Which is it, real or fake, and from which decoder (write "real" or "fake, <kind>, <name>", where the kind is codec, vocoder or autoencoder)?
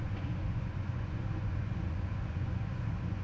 fake, vocoder, Vocos